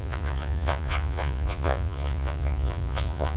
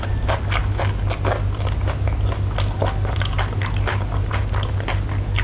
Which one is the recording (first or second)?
second